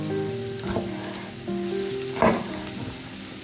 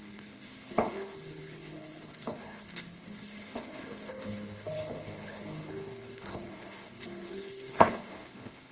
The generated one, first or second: second